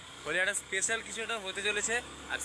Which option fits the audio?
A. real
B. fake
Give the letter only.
B